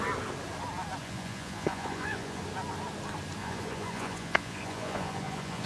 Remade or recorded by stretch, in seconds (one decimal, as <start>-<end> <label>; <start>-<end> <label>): 0.0-1.0 recorded; 1.0-2.4 remade; 2.4-3.4 recorded; 3.4-5.7 remade